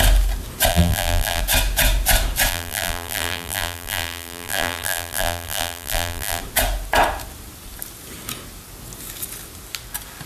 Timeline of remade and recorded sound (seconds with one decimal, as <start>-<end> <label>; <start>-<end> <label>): 0.0-0.7 recorded; 0.7-1.4 remade; 1.4-2.5 recorded; 2.5-6.4 remade; 6.4-10.3 recorded